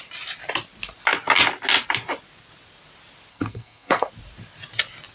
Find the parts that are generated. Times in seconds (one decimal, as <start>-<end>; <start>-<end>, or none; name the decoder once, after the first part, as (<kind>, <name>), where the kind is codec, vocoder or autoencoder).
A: 3.3-4.1 (codec, SNAC)